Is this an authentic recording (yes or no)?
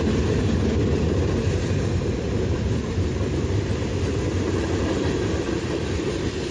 no